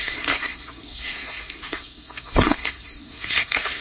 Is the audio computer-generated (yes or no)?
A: yes